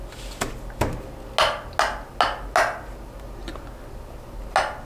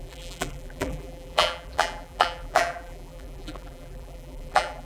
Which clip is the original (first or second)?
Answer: first